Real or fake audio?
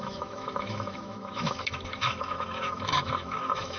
fake